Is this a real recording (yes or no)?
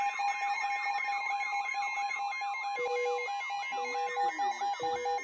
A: yes